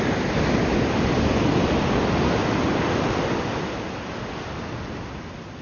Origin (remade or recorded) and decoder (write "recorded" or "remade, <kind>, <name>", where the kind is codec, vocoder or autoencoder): recorded